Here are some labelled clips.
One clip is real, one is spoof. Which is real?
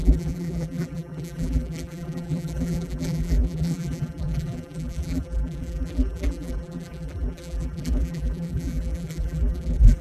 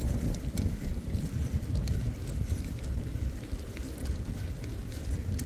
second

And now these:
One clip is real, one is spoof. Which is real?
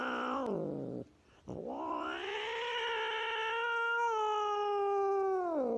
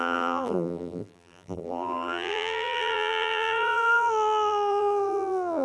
first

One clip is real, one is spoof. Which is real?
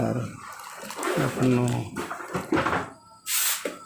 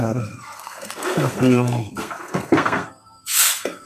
first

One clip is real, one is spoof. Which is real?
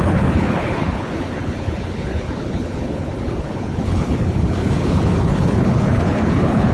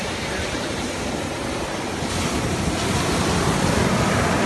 second